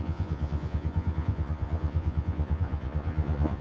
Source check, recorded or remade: remade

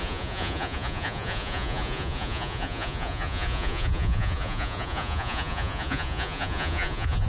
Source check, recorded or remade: remade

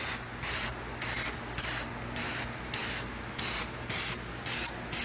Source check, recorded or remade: recorded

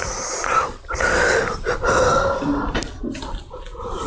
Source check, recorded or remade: recorded